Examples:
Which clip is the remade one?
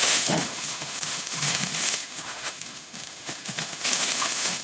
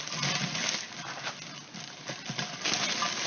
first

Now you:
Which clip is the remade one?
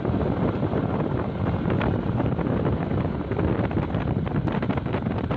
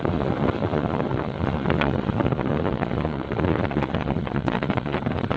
second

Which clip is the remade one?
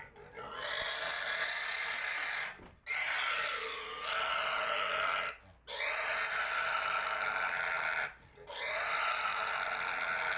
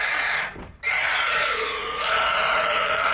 second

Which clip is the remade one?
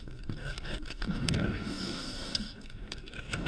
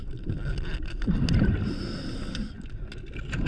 first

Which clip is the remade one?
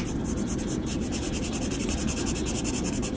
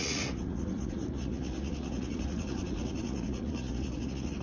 second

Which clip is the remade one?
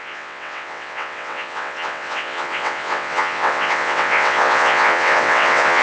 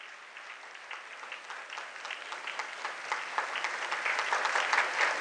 first